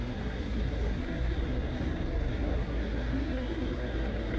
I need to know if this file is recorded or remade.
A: remade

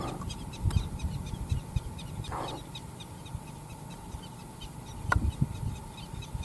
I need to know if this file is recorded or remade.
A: recorded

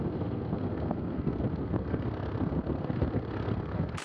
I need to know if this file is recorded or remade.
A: remade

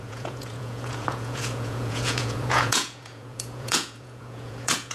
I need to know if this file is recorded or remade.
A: remade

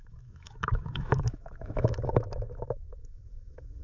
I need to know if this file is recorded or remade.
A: remade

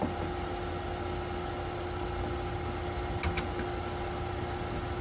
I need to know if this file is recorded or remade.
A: recorded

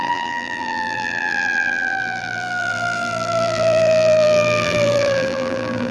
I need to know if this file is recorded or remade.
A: remade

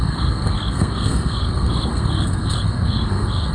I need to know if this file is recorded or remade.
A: remade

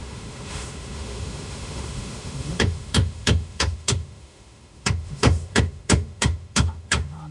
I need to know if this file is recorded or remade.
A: remade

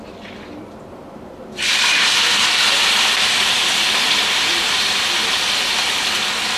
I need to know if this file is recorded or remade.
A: remade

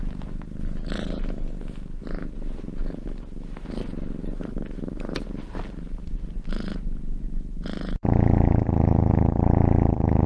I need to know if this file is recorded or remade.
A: recorded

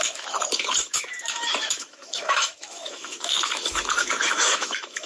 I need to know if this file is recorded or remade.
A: remade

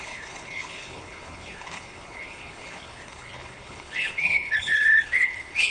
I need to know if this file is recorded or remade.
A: remade